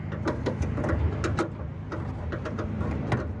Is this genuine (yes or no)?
yes